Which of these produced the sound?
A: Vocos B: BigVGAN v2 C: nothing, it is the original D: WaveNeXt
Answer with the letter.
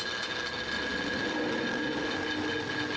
C